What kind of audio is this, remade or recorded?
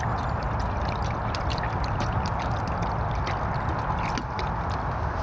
recorded